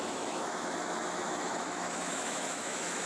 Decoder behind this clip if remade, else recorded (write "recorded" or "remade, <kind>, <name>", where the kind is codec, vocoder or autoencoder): remade, autoencoder, DAC-VAE